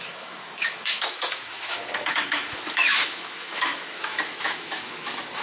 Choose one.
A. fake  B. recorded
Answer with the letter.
A